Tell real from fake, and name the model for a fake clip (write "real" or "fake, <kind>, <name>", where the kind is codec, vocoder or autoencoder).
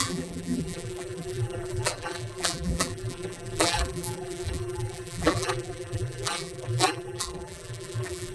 fake, vocoder, BigVGAN v2